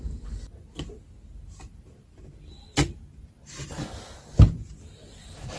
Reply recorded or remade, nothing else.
recorded